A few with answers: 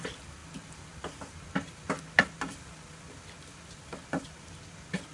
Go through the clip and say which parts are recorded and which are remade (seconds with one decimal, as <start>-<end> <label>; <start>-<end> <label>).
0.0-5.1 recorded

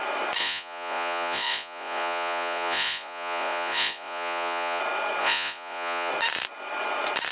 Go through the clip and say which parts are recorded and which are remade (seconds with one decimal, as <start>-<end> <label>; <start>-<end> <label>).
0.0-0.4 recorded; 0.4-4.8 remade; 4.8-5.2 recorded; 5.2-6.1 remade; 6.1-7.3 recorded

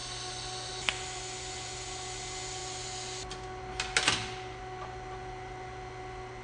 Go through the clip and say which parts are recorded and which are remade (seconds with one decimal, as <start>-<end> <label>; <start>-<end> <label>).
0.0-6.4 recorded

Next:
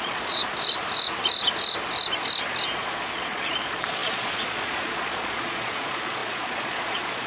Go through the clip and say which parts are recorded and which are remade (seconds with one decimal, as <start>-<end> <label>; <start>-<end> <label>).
0.0-0.4 remade; 0.4-2.7 recorded; 2.7-7.3 remade

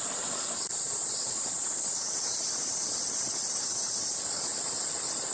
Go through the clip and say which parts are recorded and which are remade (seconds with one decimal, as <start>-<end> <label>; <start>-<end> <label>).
0.0-5.3 remade